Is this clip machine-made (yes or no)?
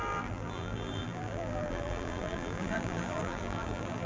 yes